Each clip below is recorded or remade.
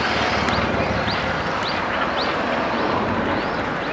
recorded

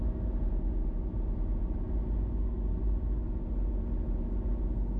recorded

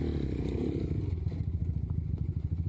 recorded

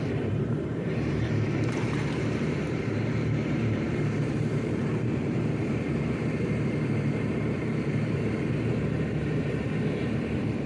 remade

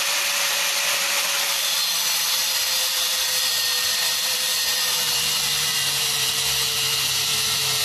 remade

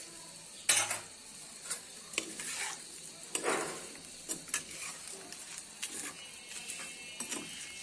recorded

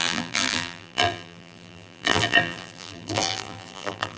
remade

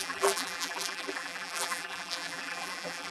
remade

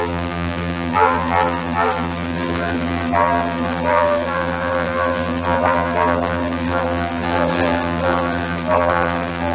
remade